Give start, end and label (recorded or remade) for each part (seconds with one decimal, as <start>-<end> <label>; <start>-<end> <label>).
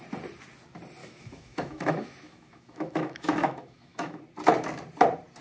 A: 0.0-1.0 recorded; 1.0-4.2 remade; 4.2-5.4 recorded